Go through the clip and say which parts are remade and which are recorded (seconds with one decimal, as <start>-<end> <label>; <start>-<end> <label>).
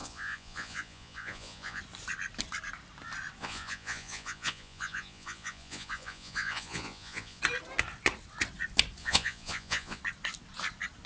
0.0-1.8 remade; 1.8-3.4 recorded; 3.4-7.4 remade; 7.4-9.0 recorded; 9.0-10.0 remade; 10.0-11.1 recorded